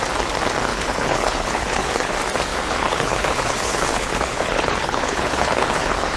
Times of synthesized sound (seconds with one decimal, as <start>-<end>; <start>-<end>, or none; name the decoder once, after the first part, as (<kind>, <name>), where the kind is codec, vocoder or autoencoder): 0.7-2.1 (codec, HILCodec); 2.5-6.2